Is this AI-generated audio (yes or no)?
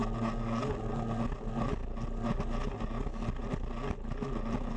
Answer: no